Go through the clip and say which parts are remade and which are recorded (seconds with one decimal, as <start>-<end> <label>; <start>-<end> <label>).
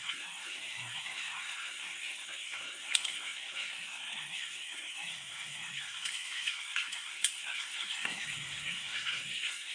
0.0-9.7 remade